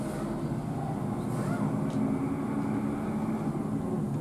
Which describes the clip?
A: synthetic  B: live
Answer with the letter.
B